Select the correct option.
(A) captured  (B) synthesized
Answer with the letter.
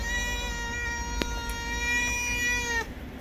A